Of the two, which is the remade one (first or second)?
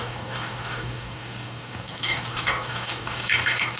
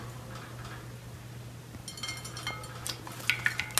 first